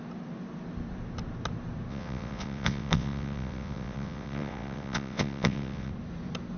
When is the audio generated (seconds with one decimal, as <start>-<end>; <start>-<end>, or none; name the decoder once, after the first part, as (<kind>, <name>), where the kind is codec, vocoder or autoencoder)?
1.9-5.9 (vocoder, WaveNeXt)